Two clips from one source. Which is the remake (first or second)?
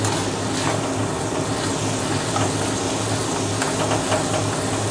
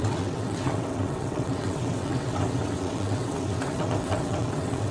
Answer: second